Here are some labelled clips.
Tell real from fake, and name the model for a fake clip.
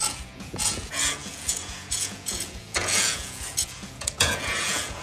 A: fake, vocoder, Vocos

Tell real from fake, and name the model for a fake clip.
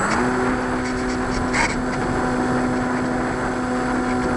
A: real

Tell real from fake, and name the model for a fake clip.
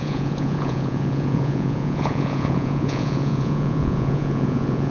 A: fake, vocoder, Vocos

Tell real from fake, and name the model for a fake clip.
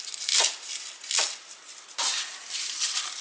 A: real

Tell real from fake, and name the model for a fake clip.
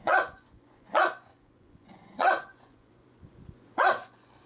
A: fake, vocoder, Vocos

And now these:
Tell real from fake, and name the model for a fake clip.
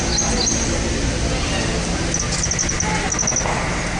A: real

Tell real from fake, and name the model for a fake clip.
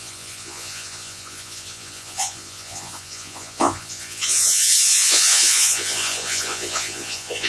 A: fake, vocoder, Vocos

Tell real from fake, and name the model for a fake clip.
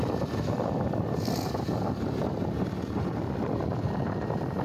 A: real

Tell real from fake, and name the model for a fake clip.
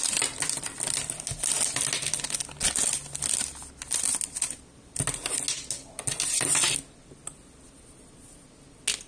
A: real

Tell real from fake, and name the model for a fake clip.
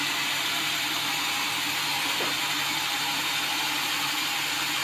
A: real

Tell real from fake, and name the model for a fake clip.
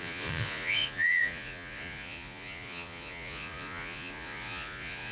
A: fake, vocoder, Vocos